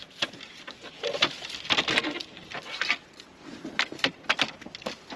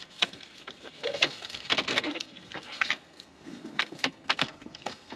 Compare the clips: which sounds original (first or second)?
first